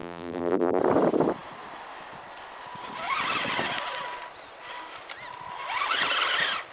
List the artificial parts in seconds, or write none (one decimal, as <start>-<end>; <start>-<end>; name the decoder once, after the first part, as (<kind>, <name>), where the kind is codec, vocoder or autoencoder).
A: 0.0-0.8 (vocoder, BigVGAN v2)